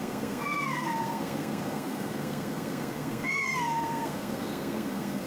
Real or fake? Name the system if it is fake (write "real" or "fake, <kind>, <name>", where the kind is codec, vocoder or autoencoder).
fake, codec, SNAC